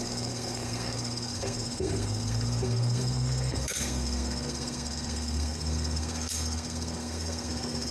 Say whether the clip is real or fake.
fake